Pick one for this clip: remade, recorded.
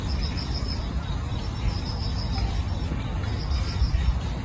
recorded